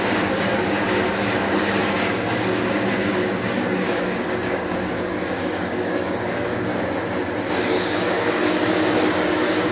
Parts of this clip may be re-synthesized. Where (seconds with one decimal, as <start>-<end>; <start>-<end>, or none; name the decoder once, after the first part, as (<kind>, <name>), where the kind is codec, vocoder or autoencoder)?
0.0-6.7 (codec, DAC); 7.5-9.7

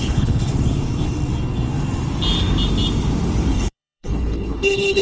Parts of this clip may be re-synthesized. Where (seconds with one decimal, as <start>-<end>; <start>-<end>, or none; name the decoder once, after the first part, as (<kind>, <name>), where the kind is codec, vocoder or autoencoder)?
0.0-0.5 (codec, HILCodec); 3.5-5.0

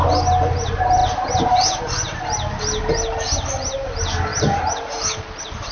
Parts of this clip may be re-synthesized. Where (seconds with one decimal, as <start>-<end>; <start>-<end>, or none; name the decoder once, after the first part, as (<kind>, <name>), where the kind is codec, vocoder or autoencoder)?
none

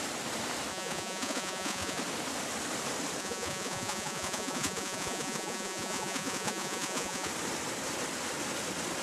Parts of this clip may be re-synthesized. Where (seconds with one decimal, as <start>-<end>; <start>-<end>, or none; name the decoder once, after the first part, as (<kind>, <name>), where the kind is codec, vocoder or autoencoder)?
0.7-2.0 (vocoder, Vocos); 3.2-7.3

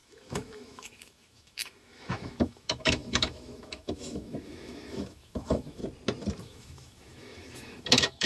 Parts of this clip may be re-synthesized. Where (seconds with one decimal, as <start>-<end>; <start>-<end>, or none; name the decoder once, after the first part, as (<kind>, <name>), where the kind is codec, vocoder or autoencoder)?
0.0-5.8 (autoencoder, DAC-VAE); 6.4-8.3

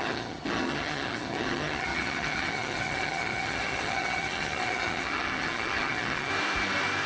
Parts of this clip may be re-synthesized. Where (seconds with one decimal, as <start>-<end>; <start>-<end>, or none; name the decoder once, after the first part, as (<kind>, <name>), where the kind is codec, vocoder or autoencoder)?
0.0-6.3 (vocoder, HiFi-GAN)